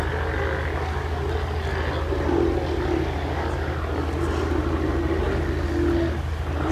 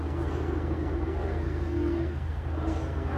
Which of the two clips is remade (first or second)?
second